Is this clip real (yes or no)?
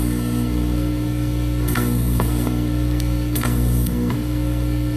no